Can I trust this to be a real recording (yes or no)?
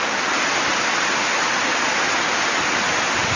yes